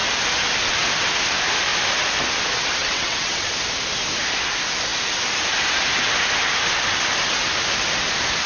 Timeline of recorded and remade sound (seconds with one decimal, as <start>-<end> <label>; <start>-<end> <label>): 0.0-2.8 recorded; 2.8-3.5 remade; 3.5-8.5 recorded